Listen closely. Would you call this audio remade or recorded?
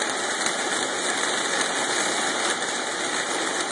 recorded